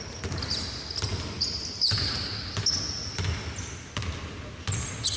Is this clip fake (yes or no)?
no